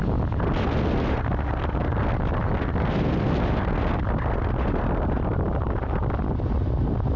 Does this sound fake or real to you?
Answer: real